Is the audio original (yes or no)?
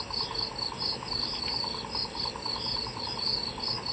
yes